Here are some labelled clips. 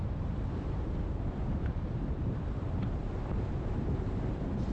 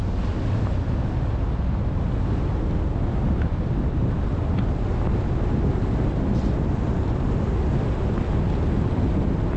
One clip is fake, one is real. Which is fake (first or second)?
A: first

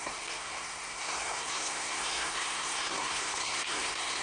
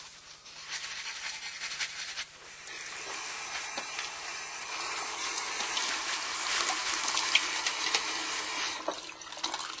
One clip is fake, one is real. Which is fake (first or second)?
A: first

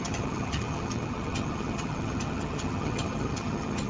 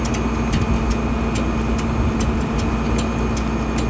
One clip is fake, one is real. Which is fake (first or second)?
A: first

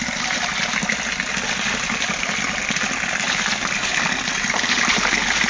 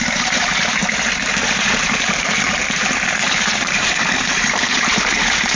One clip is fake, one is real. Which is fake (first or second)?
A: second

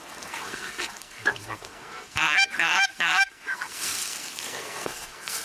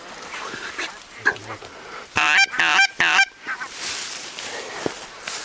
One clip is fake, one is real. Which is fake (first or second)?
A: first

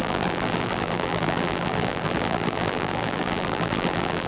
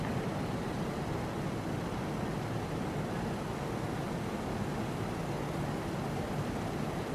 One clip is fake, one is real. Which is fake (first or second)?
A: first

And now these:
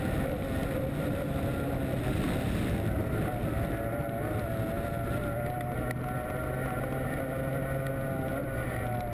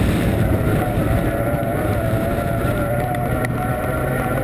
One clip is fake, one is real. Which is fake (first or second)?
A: second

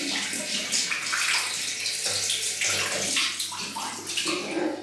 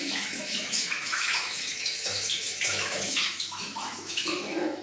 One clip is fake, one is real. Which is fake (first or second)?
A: second